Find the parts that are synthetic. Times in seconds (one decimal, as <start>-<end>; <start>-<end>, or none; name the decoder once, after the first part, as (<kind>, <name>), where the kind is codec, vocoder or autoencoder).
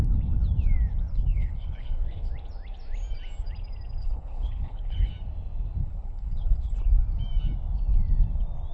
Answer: 1.1-2.3 (codec, HILCodec); 4.0-5.1; 5.8-6.8